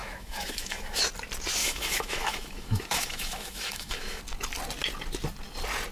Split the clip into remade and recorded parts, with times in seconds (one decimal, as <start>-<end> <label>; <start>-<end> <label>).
0.0-1.0 remade; 1.0-1.6 recorded; 1.6-4.2 remade; 4.2-5.9 recorded